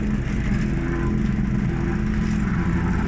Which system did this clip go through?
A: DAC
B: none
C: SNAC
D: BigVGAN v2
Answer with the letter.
B